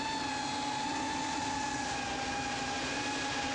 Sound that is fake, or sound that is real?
real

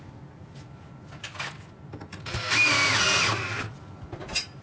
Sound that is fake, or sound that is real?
real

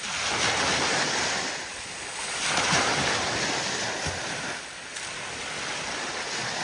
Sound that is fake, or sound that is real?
real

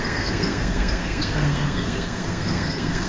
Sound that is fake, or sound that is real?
fake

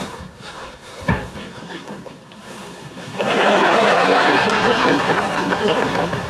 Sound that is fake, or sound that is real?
fake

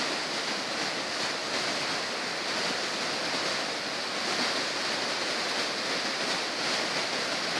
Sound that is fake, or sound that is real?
real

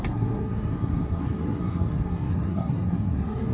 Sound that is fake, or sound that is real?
fake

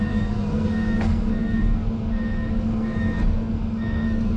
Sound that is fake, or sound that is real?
fake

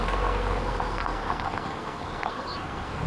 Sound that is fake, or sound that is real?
fake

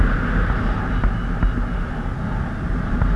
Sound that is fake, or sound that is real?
real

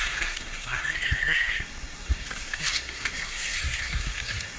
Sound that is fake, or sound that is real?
fake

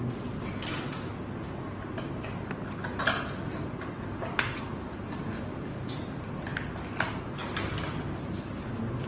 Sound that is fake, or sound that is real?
real